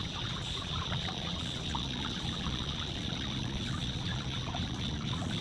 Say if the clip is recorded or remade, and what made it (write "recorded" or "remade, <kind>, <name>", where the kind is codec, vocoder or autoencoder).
remade, vocoder, Vocos